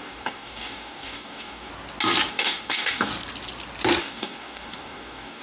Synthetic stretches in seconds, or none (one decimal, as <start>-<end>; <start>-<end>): 0.0-1.7; 2.3-3.1; 4.0-5.4